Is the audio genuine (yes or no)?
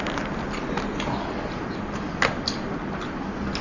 yes